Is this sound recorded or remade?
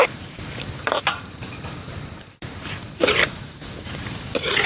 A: remade